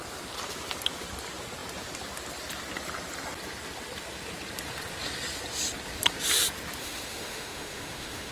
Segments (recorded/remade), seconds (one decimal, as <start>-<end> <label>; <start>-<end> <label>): 0.0-6.8 recorded; 6.8-8.3 remade

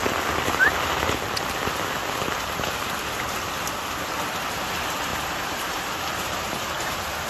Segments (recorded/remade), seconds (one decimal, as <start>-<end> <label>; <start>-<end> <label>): 0.0-5.1 recorded; 5.1-6.5 remade; 6.5-7.3 recorded

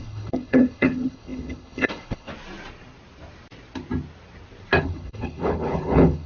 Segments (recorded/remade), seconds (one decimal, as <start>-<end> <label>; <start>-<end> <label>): 0.0-2.3 remade; 2.3-4.8 recorded; 4.8-6.3 remade

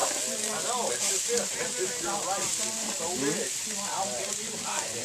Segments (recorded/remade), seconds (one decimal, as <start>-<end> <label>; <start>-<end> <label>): 0.0-5.0 recorded

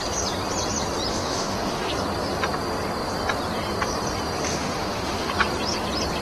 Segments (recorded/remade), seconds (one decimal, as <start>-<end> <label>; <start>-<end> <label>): 0.0-1.1 recorded; 1.1-1.9 remade; 1.9-4.5 recorded; 4.5-5.3 remade; 5.3-6.2 recorded

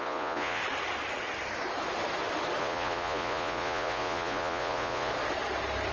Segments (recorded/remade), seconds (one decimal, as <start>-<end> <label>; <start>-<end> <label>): 0.0-0.6 remade; 0.6-2.6 recorded; 2.6-5.1 remade; 5.1-5.9 recorded